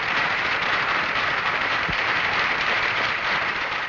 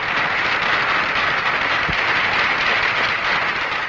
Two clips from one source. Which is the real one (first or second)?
second